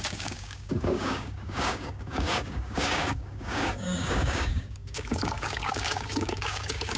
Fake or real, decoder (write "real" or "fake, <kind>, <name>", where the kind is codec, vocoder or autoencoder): fake, codec, DAC